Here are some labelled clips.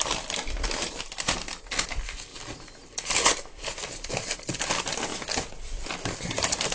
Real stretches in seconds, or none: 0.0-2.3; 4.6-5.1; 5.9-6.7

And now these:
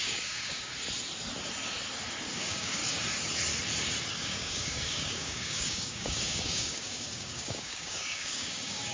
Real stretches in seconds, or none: 0.7-2.3; 2.8-4.2

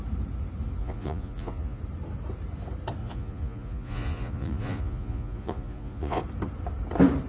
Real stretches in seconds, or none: 0.0-0.8; 1.8-3.0; 6.2-7.3

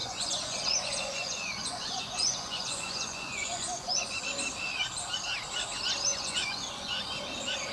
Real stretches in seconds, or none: 4.2-6.1; 7.1-7.7

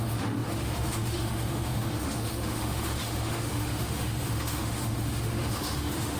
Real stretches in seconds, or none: none

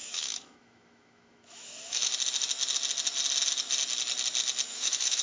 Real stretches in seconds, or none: 2.1-4.7